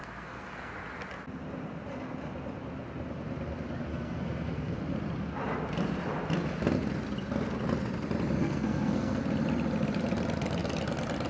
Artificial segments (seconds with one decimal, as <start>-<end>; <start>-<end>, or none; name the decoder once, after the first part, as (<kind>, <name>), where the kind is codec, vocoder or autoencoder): 0.0-0.7 (codec, SNAC); 3.9-4.8; 8.4-9.2